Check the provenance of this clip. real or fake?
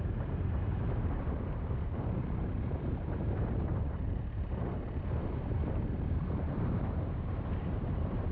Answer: fake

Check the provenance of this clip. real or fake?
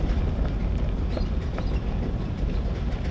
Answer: real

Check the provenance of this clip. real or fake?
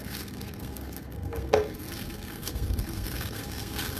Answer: fake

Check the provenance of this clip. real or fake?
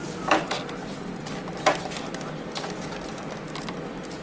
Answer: real